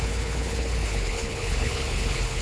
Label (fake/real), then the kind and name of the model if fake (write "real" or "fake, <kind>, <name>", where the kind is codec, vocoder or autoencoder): fake, codec, HILCodec